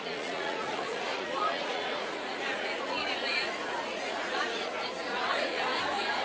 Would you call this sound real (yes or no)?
no